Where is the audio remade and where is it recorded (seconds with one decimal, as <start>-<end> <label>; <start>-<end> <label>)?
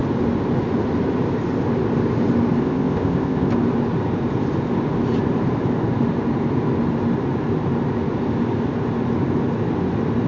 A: 0.0-2.6 recorded; 2.6-3.5 remade; 3.5-10.3 recorded